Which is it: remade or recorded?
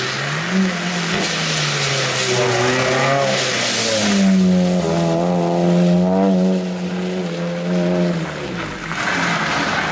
recorded